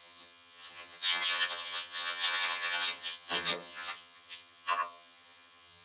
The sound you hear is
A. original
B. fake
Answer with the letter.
B